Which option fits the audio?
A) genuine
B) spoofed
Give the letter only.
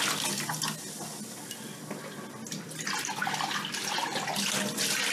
A